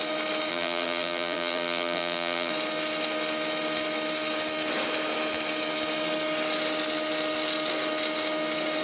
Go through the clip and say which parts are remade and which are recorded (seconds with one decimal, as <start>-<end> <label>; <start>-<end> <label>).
0.0-0.5 recorded; 0.5-2.5 remade; 2.5-8.8 recorded